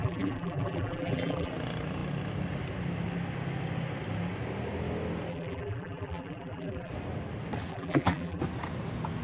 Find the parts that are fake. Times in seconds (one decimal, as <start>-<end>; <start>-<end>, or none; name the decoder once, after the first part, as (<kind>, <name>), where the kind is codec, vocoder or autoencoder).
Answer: 0.0-1.5 (vocoder, BigVGAN v2); 5.3-6.9; 7.7-8.4